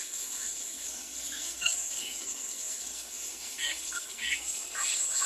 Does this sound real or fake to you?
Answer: fake